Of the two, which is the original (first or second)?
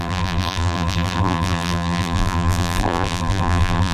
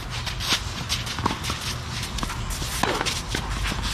second